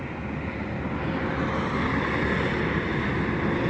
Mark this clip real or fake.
real